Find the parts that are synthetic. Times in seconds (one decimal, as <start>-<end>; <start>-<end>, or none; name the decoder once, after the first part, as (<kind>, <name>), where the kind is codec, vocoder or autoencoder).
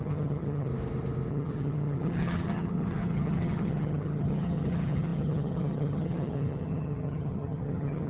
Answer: 0.0-0.7 (vocoder, HiFi-GAN); 1.3-8.1